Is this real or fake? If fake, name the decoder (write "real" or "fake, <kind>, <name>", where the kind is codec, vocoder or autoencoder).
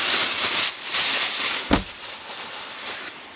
real